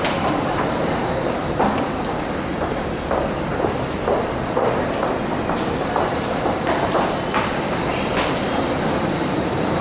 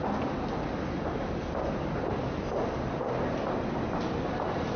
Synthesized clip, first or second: first